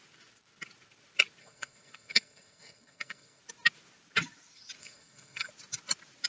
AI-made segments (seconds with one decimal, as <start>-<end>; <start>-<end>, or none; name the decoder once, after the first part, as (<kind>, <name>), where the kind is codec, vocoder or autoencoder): 1.4-3.4 (codec, SNAC); 4.8-5.5